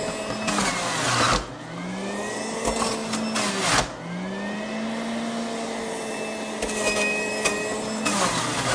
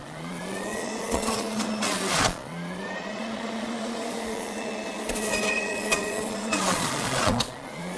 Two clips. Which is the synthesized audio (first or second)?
second